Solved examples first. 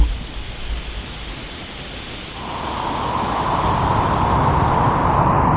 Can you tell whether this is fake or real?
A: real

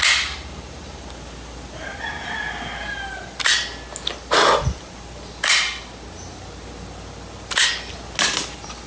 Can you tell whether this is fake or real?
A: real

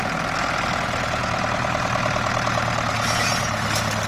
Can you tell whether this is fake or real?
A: real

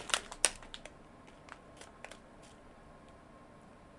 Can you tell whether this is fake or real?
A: real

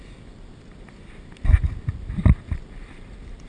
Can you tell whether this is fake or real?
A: fake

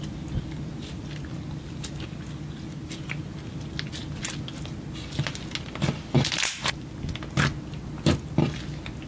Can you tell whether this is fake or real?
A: real